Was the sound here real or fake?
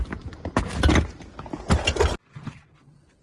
real